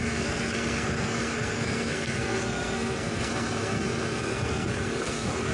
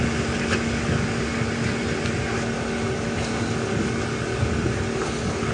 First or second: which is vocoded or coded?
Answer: first